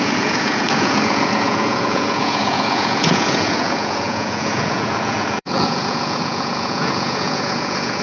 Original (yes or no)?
no